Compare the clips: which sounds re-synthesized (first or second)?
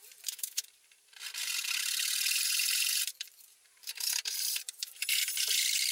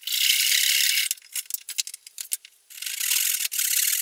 first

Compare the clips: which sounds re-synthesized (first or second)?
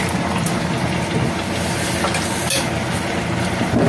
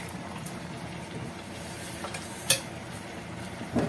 second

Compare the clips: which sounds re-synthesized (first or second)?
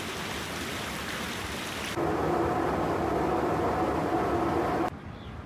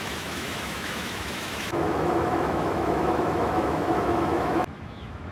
second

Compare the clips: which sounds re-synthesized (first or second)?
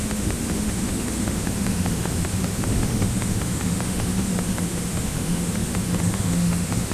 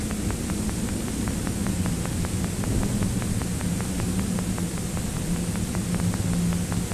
first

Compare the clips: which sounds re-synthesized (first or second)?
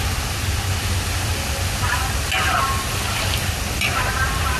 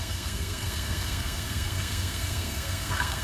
second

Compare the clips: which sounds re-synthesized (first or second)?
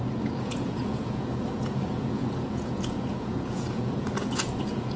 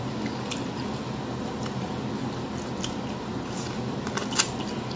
first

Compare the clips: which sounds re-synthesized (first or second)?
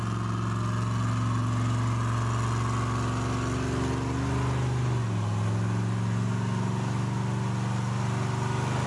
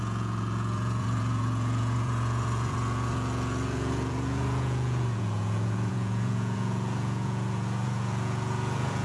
second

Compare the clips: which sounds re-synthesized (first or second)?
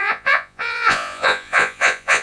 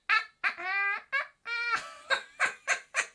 first